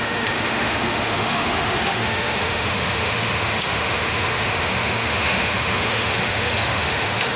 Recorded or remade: remade